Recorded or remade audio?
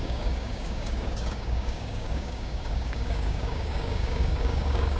remade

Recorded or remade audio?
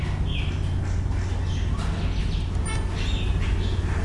recorded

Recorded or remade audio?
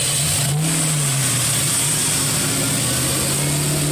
recorded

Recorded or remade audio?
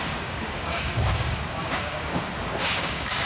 remade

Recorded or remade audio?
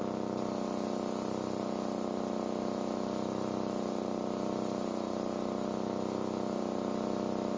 recorded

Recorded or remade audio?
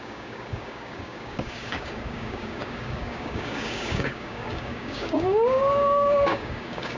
remade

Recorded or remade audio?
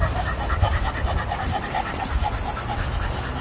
recorded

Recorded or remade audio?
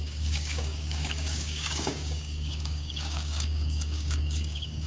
remade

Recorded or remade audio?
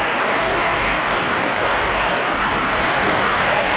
remade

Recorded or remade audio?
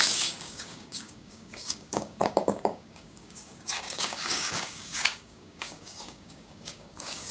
remade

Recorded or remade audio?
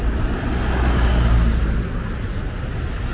recorded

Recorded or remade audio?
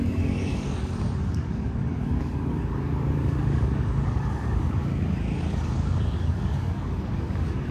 remade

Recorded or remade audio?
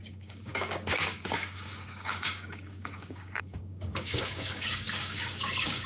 remade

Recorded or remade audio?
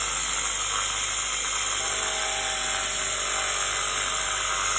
recorded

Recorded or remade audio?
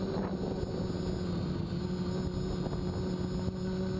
recorded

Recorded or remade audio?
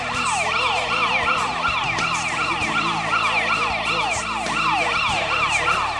recorded